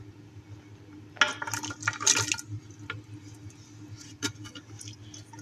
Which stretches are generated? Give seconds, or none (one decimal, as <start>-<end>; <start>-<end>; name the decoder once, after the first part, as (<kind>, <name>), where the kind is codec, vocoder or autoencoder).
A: none

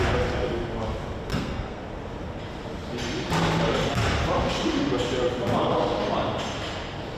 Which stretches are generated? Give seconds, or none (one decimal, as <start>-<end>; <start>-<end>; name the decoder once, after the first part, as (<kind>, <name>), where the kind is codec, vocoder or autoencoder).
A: 1.3-1.8 (codec, SNAC)